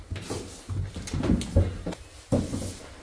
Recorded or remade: recorded